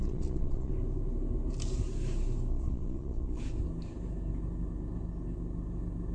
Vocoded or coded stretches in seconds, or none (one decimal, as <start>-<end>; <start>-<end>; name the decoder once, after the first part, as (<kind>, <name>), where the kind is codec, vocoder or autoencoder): 0.0-0.7 (vocoder, Vocos); 2.5-3.4